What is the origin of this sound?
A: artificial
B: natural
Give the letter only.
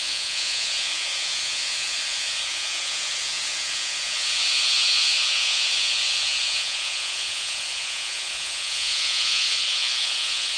A